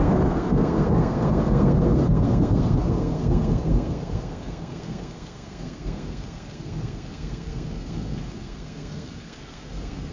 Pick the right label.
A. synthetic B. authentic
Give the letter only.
A